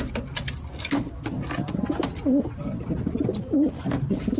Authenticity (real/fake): real